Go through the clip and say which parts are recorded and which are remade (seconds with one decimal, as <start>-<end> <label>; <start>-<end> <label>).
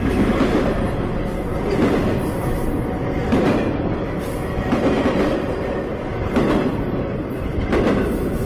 0.0-8.5 recorded